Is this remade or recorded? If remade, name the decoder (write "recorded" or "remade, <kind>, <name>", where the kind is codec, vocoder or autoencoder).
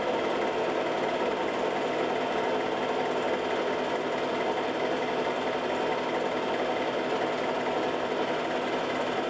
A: recorded